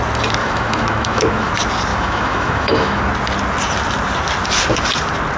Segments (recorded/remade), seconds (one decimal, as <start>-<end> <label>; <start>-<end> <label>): 0.0-0.4 recorded; 0.4-1.5 remade; 1.5-1.9 recorded; 1.9-3.0 remade; 3.0-5.4 recorded